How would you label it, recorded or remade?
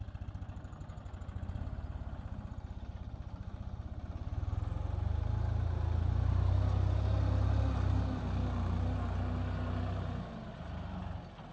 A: recorded